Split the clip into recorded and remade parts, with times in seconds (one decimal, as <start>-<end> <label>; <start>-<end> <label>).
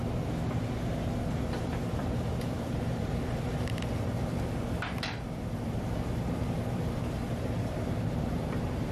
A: 0.0-1.3 recorded; 1.3-8.9 remade